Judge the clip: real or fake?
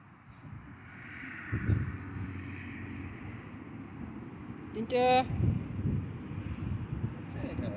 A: real